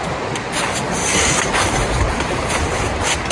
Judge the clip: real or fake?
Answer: real